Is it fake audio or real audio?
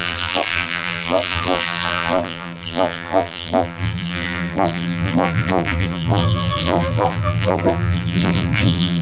fake